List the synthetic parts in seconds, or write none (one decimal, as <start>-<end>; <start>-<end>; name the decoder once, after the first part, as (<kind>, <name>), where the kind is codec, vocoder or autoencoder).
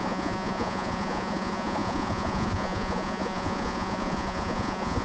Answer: 0.0-5.0 (vocoder, Vocos)